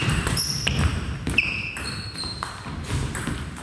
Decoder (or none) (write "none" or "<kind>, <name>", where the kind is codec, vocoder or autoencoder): vocoder, BigVGAN v2